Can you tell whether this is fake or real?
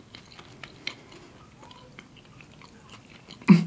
real